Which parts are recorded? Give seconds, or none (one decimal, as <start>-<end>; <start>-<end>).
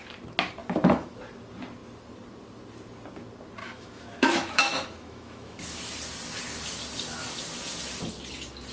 0.0-0.6; 1.2-3.6; 5.8-8.7